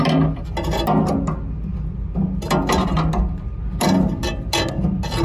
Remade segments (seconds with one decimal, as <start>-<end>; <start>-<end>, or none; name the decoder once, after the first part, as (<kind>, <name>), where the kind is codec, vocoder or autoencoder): none